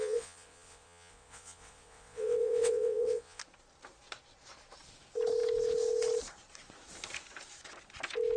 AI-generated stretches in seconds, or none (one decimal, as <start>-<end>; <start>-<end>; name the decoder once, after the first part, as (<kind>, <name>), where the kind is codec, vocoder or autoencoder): 0.0-3.4 (vocoder, WaveNeXt)